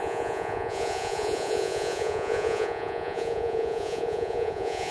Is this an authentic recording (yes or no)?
no